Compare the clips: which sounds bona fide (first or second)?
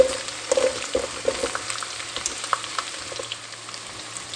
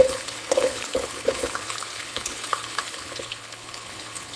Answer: first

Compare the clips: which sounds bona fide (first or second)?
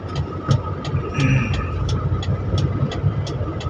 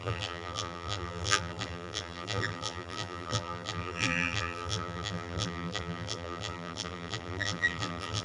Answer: first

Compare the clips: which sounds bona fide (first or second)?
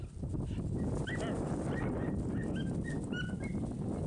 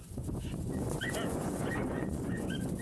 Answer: first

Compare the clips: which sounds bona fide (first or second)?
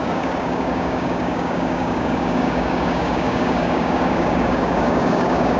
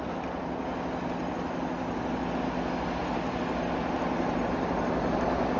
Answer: second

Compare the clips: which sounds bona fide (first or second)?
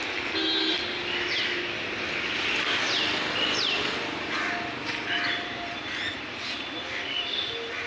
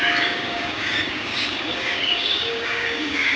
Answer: first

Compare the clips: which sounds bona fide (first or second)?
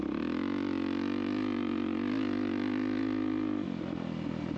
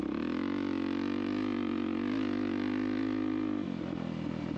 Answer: second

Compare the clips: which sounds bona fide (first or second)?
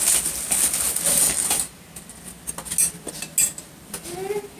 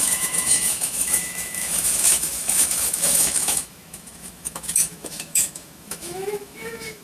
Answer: first